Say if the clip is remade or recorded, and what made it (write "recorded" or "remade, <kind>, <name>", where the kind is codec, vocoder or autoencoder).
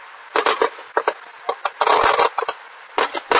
recorded